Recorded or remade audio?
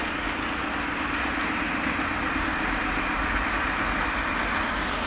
recorded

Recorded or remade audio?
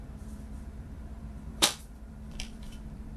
remade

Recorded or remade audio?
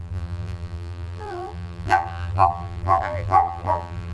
remade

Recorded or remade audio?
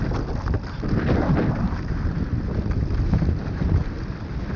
remade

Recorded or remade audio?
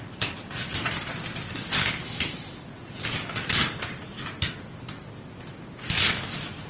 remade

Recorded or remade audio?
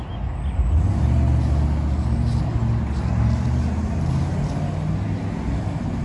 recorded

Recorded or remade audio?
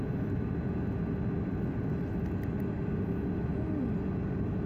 recorded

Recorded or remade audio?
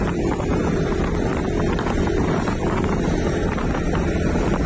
recorded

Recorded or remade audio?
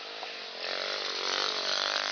recorded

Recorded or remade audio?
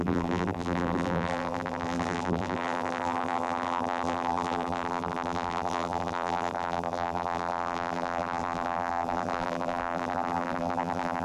remade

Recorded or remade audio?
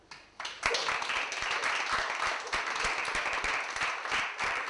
recorded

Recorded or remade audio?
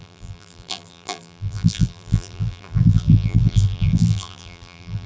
remade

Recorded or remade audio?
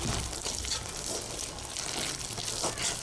recorded